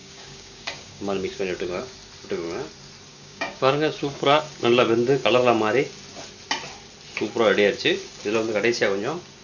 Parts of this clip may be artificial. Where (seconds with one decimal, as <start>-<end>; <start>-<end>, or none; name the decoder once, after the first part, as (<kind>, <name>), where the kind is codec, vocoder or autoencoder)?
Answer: 0.0-1.8 (codec, DAC); 3.1-4.4